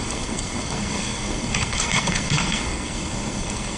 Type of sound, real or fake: fake